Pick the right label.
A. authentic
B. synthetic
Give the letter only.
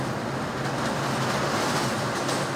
A